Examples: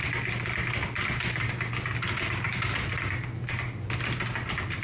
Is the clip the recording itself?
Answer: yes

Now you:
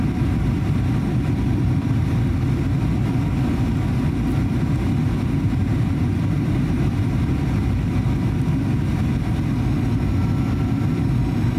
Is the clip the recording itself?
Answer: yes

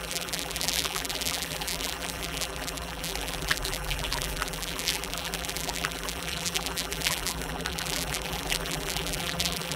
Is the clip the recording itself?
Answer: no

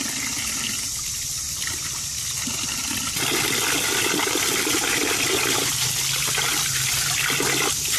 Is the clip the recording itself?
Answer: yes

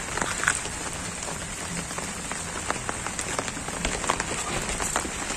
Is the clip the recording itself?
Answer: yes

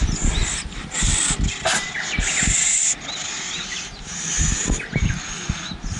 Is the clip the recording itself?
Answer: yes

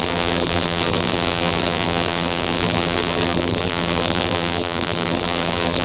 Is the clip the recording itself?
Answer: no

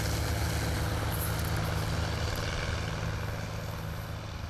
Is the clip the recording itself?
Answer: yes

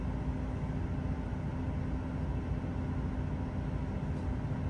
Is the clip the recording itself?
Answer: yes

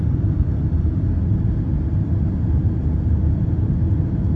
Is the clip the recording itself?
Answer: yes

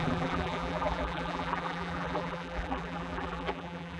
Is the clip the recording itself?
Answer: no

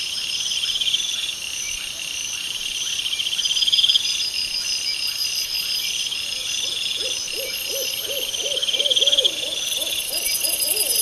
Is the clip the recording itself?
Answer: no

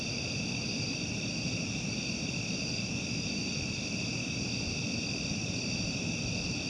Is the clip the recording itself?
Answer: no